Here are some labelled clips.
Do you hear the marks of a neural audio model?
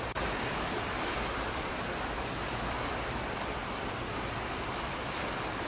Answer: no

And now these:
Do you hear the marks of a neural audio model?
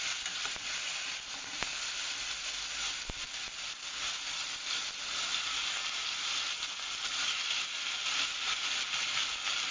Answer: no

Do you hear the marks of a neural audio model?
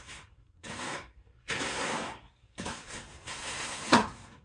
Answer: yes